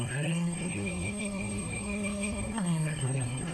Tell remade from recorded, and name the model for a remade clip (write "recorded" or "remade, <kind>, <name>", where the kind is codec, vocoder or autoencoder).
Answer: remade, codec, SNAC